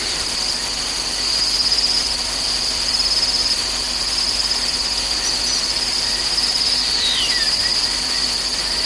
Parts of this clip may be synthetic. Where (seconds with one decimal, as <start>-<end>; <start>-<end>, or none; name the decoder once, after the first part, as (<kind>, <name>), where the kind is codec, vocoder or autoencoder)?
0.0-8.9 (vocoder, BigVGAN v2)